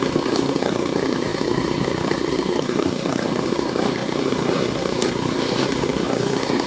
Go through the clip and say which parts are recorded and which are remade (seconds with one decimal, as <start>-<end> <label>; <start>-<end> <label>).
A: 0.0-6.7 remade